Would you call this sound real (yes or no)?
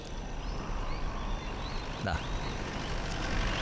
yes